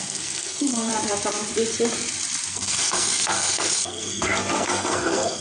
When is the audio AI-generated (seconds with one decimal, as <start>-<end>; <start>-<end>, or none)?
0.0-0.9; 2.5-5.4